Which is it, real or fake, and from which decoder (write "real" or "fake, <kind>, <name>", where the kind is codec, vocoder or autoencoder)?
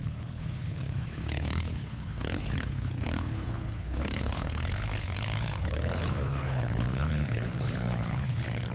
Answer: fake, codec, HILCodec